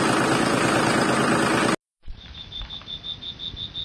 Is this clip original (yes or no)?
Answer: yes